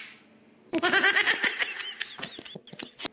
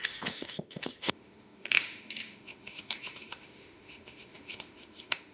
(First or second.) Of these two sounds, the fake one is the second